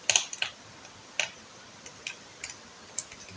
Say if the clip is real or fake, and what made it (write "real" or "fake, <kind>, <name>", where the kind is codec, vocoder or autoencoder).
real